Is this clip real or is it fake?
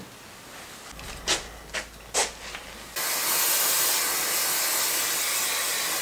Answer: real